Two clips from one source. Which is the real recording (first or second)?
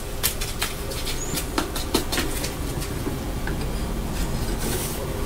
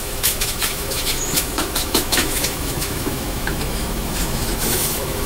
first